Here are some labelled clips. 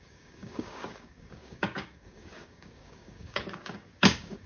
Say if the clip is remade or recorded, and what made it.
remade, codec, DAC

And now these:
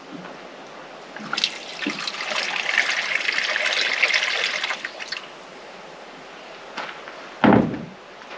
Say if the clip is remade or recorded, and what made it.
recorded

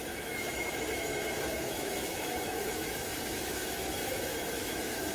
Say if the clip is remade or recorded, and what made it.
remade, autoencoder, DAC-VAE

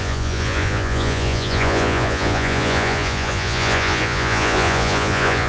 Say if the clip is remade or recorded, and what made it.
remade, vocoder, Vocos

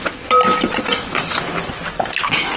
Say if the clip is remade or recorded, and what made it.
recorded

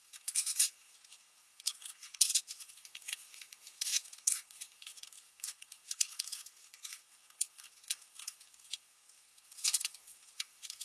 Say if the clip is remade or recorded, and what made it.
remade, codec, SNAC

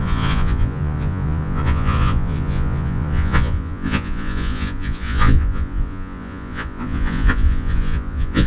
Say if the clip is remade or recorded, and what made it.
remade, vocoder, Vocos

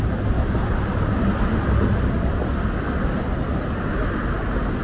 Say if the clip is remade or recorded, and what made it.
recorded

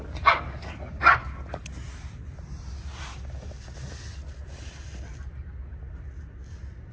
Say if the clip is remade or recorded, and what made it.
recorded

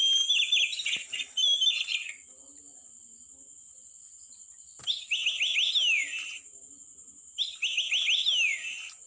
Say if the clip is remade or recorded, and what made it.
recorded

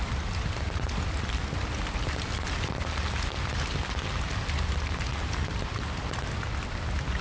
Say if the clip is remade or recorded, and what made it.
recorded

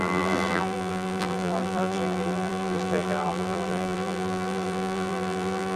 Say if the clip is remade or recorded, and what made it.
remade, vocoder, BigVGAN v2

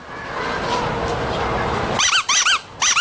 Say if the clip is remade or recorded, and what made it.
recorded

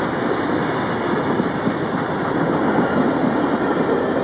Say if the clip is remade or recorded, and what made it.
recorded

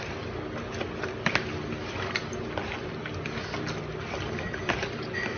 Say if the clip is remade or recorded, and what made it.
recorded